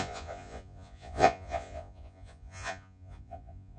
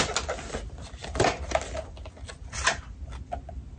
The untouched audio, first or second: second